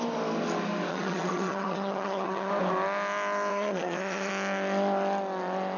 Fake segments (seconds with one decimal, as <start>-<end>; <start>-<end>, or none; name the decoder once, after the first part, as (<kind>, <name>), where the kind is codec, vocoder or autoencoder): 0.9-2.5 (vocoder, HiFi-GAN); 3.5-4.3